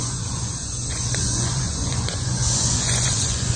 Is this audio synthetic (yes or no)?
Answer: yes